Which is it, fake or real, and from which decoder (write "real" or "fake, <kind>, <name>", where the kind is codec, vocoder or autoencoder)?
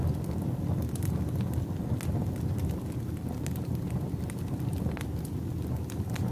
real